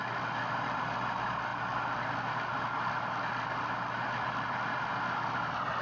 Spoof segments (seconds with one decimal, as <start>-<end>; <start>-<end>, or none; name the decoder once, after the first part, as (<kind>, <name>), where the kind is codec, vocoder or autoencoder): none